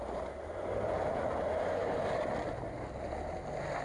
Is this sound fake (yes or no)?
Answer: no